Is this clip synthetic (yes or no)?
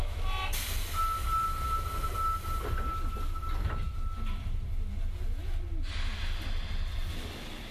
no